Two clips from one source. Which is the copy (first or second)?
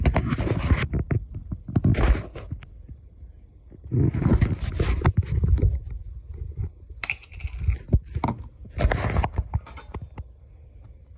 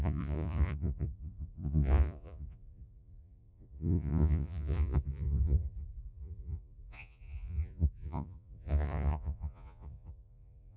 second